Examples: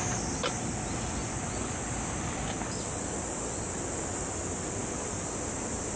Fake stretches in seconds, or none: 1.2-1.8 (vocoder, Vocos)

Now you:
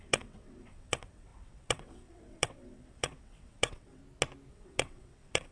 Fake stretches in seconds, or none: 0.0-4.0 (vocoder, WaveNeXt); 4.5-5.5

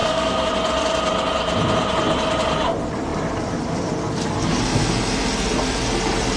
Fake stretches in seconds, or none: 0.0-0.5 (codec, SNAC)

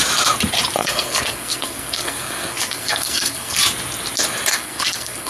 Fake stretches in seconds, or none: 0.8-3.6 (codec, SNAC); 4.5-5.3

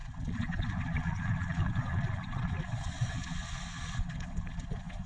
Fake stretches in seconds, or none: 0.0-5.1 (vocoder, Vocos)

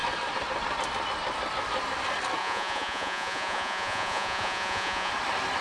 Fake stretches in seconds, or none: 2.4-5.1 (vocoder, Vocos)